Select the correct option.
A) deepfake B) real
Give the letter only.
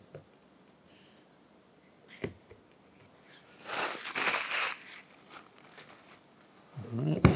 B